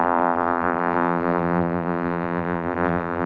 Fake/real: fake